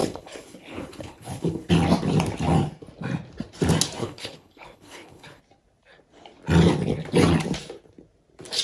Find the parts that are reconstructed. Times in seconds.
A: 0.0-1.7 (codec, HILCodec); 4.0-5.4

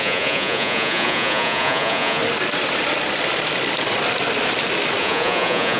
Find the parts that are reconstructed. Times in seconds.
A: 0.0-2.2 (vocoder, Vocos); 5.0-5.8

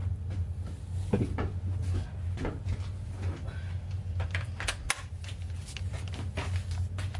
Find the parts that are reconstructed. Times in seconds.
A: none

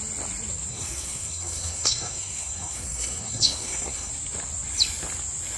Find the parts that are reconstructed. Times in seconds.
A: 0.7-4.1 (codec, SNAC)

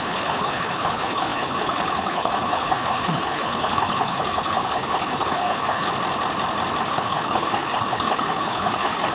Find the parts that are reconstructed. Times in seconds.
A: 0.0-5.9 (codec, HILCodec); 6.9-9.1

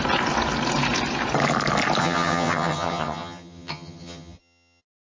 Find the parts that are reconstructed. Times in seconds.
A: 2.0-4.8 (vocoder, HiFi-GAN)